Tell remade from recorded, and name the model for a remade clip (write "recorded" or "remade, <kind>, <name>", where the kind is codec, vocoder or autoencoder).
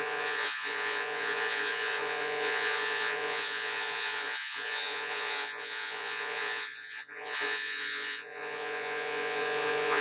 remade, vocoder, Vocos